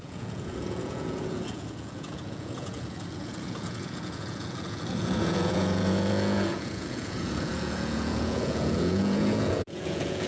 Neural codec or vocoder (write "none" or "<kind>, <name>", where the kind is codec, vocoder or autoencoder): vocoder, Vocos